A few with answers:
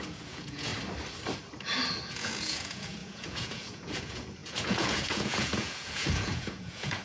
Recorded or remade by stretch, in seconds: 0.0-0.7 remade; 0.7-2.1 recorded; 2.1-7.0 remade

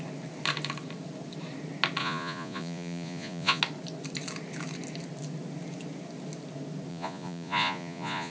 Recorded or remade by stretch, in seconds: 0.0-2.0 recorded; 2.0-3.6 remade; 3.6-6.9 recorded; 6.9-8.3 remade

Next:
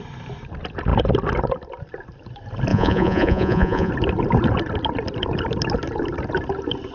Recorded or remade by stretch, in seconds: 0.0-2.7 recorded; 2.7-3.9 remade; 3.9-6.9 recorded

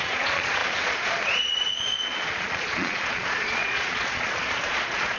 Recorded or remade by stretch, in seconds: 0.0-5.2 remade

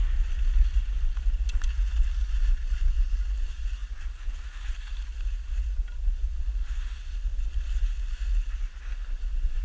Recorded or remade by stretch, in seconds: 0.0-9.6 recorded

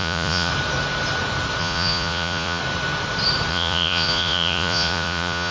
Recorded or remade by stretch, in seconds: 0.0-0.5 remade; 0.5-1.6 recorded; 1.6-2.6 remade; 2.6-3.5 recorded; 3.5-5.5 remade

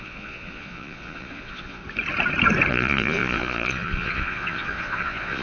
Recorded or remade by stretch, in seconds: 0.0-1.8 remade; 1.8-2.7 recorded; 2.7-5.4 remade